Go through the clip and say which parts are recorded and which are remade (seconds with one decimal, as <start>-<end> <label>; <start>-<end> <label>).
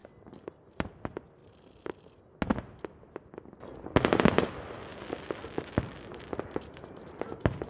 0.0-0.9 remade; 0.9-4.9 recorded; 4.9-7.2 remade; 7.2-7.7 recorded